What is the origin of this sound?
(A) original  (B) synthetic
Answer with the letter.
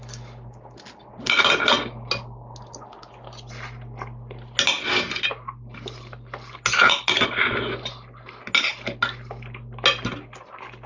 A